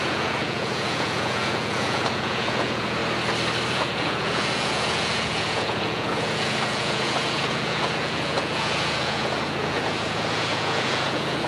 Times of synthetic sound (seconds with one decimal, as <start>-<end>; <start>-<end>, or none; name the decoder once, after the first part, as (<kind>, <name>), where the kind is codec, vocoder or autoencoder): 0.0-3.0 (vocoder, Vocos); 3.7-11.5